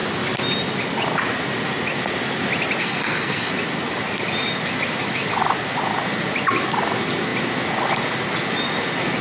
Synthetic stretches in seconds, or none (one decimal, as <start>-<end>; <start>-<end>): 2.8-3.5